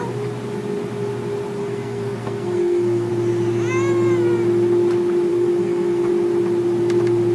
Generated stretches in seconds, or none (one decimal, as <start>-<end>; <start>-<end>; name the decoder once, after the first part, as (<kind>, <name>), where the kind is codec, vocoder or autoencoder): 1.6-3.1 (codec, SNAC); 5.3-6.1